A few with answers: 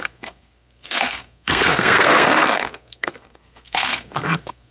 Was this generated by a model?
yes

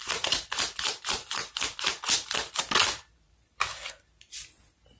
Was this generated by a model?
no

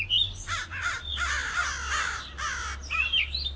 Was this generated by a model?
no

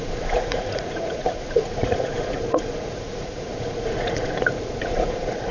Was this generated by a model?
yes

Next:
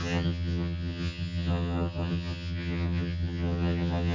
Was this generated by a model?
yes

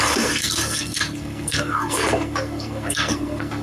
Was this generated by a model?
yes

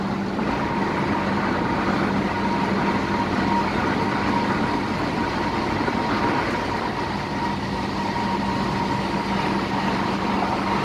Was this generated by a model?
no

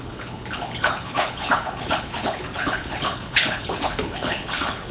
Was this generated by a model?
yes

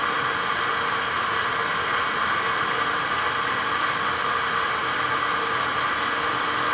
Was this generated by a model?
no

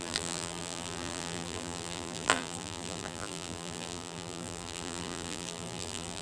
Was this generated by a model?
yes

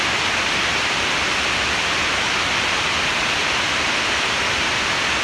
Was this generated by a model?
no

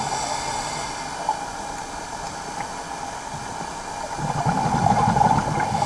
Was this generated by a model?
no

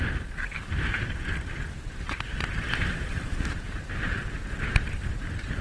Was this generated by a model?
yes